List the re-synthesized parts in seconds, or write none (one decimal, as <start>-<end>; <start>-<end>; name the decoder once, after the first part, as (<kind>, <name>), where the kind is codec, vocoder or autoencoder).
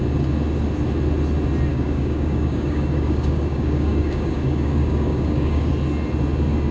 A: 1.7-5.7 (codec, DAC)